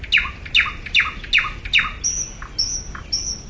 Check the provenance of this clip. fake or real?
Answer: real